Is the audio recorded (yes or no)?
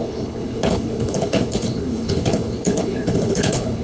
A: no